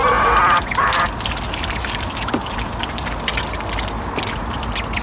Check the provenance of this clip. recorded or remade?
recorded